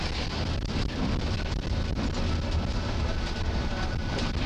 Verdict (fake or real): real